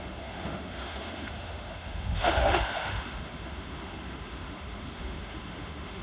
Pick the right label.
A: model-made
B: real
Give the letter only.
A